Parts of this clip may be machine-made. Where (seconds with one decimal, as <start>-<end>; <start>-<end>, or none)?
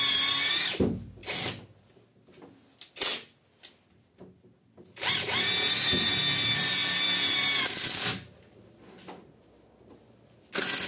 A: none